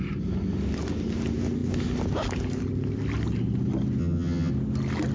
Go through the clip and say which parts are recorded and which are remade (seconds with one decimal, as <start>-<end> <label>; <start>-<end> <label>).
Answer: 0.0-4.0 recorded; 4.0-4.5 remade; 4.5-5.1 recorded